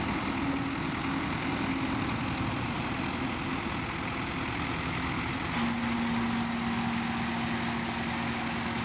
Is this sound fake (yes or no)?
no